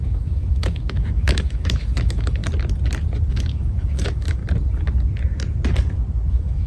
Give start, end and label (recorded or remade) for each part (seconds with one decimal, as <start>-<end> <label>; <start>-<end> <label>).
0.0-2.4 remade; 2.4-3.3 recorded; 3.3-4.4 remade; 4.4-6.3 recorded; 6.3-6.7 remade